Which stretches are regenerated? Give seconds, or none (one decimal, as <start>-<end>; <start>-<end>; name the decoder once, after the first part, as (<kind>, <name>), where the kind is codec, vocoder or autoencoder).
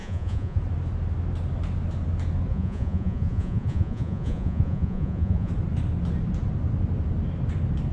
0.0-0.6 (vocoder, Vocos); 2.5-5.5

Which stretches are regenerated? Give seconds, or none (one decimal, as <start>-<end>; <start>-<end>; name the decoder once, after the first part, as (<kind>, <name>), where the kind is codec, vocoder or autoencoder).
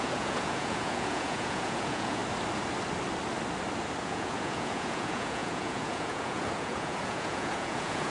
0.0-2.2 (vocoder, Vocos); 4.0-8.1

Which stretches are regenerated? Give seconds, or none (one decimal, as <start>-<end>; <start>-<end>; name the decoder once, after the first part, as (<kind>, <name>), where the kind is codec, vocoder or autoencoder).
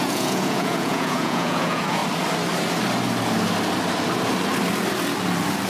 0.0-2.0 (vocoder, Vocos)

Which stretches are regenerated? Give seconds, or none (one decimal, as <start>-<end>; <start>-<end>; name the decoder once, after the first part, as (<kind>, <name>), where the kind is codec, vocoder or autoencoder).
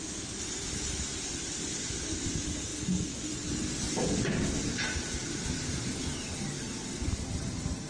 none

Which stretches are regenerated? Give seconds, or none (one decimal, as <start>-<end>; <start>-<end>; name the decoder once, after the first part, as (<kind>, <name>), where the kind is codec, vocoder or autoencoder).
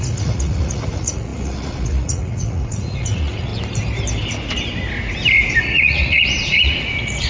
0.0-3.5 (vocoder, Vocos); 5.6-7.3